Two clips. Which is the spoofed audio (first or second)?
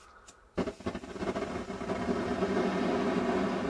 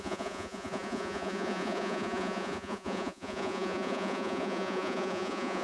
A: second